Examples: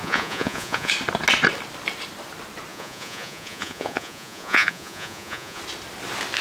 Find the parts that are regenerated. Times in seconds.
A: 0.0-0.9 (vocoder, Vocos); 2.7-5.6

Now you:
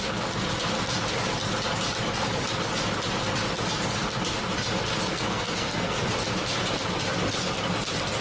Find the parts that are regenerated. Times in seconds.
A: 5.1-6.0 (codec, SNAC)

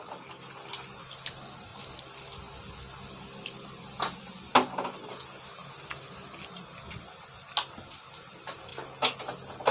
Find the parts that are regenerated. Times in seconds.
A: none

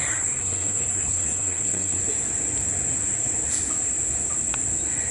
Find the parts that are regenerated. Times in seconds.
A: 0.0-2.0 (codec, SNAC)

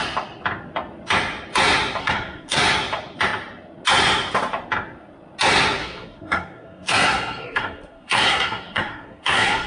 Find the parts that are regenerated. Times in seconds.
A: 2.0-2.6 (codec, SNAC); 5.8-9.7

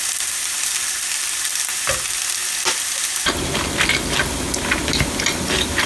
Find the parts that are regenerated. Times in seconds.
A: none

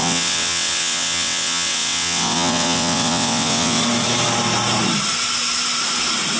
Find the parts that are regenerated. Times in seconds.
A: 0.0-3.8 (vocoder, WaveNeXt)

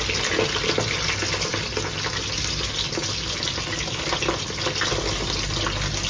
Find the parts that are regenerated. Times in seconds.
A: none